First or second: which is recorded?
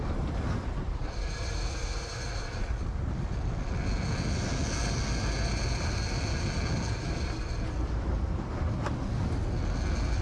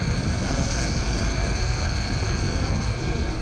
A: first